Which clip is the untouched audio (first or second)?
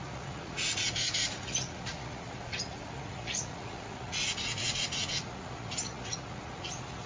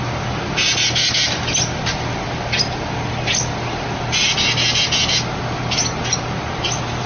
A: second